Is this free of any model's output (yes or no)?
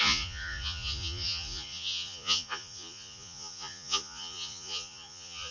no